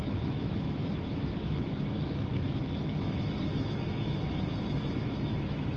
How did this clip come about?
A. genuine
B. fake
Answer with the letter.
B